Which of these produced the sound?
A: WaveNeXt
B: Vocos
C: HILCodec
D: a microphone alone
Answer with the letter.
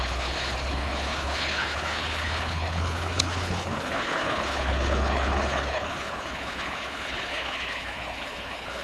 C